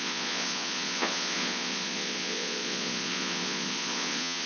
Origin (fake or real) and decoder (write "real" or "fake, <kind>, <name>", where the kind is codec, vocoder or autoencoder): fake, vocoder, Vocos